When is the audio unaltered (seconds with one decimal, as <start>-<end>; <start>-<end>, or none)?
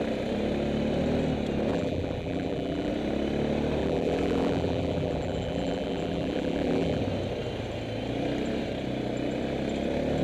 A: 0.0-1.7; 2.9-3.8; 7.0-10.2